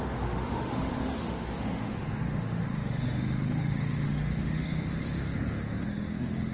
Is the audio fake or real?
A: fake